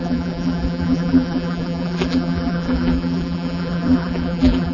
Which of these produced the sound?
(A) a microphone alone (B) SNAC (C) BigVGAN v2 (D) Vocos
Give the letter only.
C